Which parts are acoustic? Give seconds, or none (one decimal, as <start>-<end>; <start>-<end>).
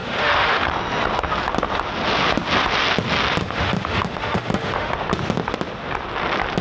0.7-3.4; 4.9-6.6